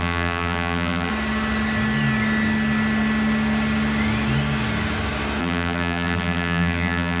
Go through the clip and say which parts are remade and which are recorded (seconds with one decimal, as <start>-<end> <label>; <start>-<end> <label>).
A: 0.0-1.1 remade; 1.1-5.4 recorded; 5.4-7.2 remade